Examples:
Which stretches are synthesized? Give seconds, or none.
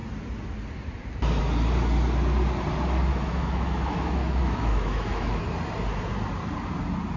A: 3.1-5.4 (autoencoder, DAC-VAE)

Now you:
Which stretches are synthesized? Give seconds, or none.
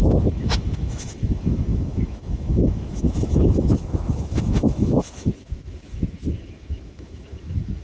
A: 0.0-7.8 (autoencoder, DAC-VAE)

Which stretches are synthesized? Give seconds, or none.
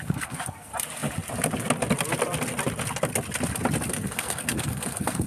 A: 0.0-0.7 (codec, SNAC); 3.9-5.3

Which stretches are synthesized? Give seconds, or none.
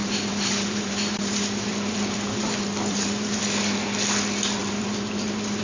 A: 0.0-3.4 (vocoder, BigVGAN v2); 4.6-5.6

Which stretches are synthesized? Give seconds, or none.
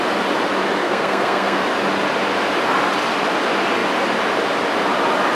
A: 0.8-1.6 (codec, SNAC)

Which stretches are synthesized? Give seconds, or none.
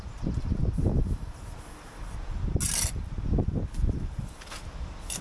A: none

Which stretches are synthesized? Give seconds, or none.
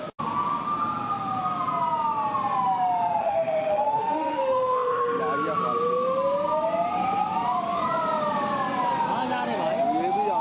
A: 3.2-5.2 (autoencoder, DAC-VAE)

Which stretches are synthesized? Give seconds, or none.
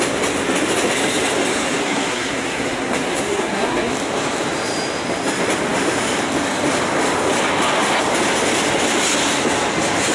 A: 1.8-3.9 (codec, SNAC)